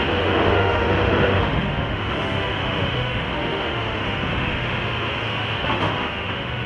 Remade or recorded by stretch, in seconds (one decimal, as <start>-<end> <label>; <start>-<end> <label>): 0.0-6.7 remade